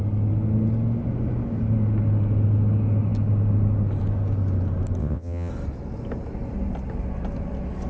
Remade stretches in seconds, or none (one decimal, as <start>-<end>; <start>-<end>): 5.0-5.5